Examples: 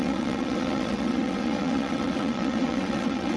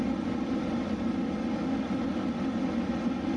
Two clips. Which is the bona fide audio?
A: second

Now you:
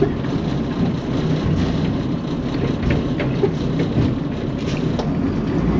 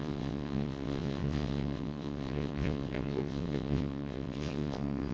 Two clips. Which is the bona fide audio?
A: first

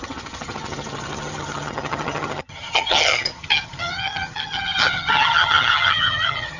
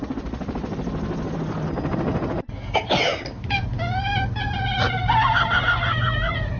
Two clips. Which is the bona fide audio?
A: second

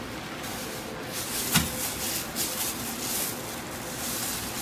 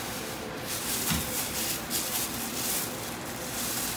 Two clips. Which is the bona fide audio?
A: first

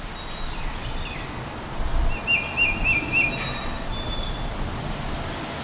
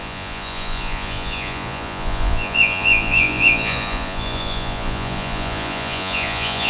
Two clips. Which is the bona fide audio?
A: first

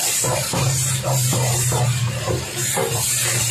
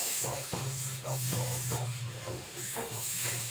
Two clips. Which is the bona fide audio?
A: first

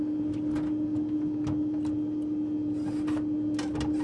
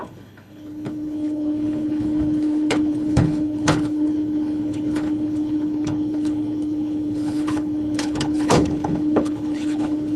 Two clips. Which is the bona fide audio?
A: first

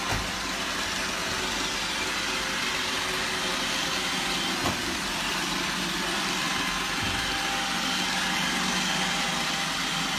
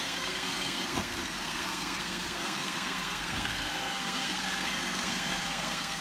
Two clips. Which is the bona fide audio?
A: first